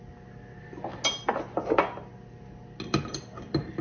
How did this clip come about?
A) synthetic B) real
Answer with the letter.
B